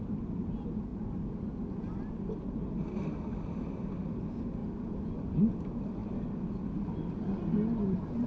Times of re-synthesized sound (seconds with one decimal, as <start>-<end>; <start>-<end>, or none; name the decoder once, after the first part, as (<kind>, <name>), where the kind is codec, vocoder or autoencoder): none